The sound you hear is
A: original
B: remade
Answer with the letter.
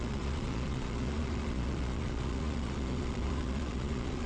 B